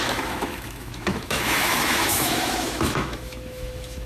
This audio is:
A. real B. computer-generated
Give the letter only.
B